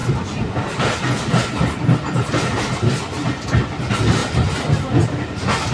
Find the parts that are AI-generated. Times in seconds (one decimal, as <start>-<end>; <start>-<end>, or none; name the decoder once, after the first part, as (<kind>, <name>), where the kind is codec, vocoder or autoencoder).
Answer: none